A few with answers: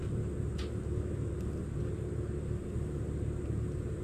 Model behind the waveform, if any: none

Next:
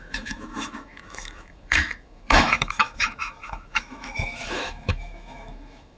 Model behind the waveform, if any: autoencoder, DAC-VAE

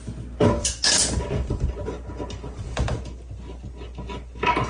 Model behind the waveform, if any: none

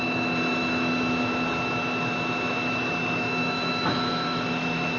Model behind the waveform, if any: autoencoder, DAC-VAE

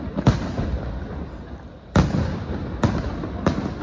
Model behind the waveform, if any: none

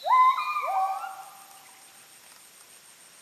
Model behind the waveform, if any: none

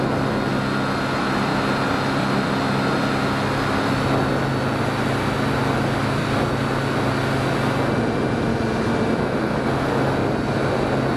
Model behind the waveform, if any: none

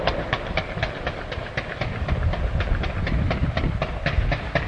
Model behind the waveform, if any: none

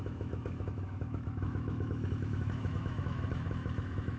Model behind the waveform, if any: autoencoder, DAC-VAE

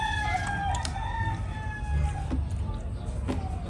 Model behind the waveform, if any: none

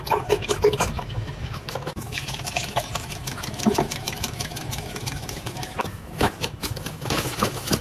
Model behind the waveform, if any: autoencoder, DAC-VAE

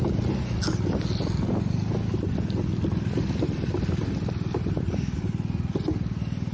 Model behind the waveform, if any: none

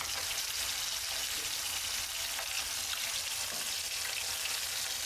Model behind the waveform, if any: none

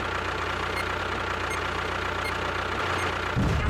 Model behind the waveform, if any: none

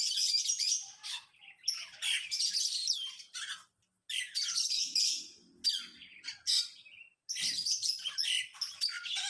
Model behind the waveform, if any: none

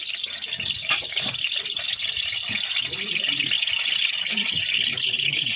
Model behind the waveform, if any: none